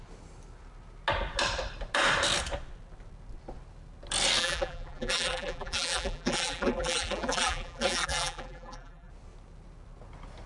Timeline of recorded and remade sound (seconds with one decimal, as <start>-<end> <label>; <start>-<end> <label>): 0.0-4.4 recorded; 4.4-9.1 remade; 9.1-10.5 recorded